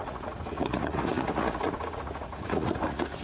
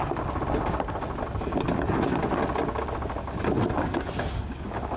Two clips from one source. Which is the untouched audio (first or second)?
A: second